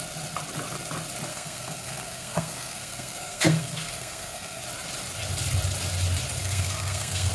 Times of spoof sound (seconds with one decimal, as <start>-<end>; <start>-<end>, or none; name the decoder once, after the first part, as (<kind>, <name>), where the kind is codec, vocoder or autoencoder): 1.3-4.6 (codec, SNAC); 6.4-7.3